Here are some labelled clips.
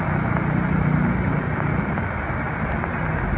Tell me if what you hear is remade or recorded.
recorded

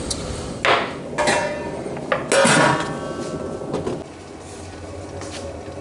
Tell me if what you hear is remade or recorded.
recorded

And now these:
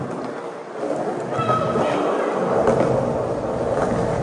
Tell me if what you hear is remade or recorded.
recorded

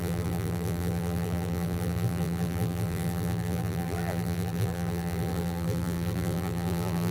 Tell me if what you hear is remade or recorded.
remade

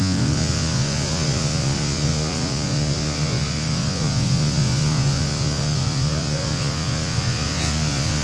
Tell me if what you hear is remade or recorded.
remade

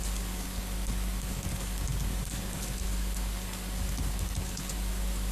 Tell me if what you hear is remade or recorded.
remade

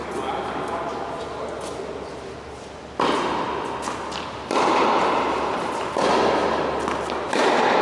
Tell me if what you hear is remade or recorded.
recorded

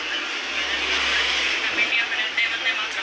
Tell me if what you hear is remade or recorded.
recorded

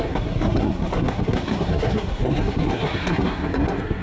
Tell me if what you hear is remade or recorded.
remade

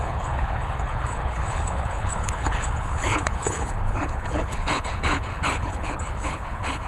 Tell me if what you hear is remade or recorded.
remade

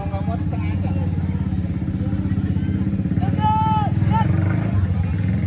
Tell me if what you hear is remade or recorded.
recorded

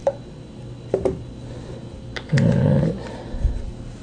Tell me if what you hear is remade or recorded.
recorded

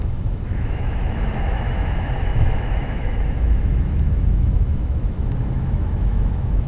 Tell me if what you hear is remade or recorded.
remade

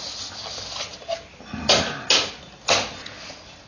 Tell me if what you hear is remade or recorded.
recorded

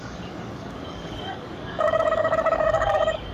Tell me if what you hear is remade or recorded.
remade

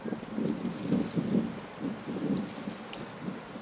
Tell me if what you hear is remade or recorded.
recorded